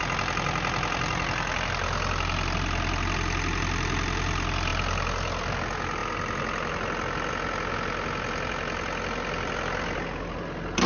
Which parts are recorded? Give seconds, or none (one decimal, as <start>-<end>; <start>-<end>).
0.0-10.9